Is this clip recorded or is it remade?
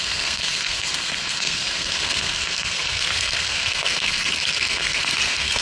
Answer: remade